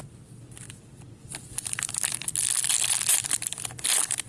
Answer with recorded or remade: recorded